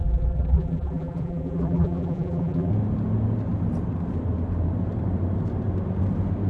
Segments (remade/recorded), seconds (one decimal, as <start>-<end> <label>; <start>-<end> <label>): 0.0-2.7 remade; 2.7-6.5 recorded